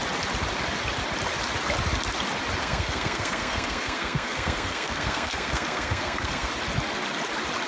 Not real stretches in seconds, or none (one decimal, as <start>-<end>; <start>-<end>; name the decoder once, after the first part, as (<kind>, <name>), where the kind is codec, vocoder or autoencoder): 2.6-6.5 (codec, SNAC)